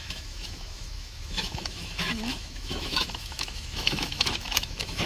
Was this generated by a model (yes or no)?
yes